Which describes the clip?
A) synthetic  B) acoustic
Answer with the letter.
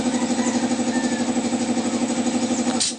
B